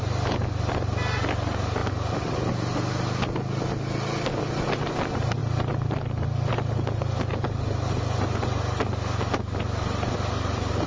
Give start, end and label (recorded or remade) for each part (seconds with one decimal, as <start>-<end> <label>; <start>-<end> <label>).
0.0-10.9 recorded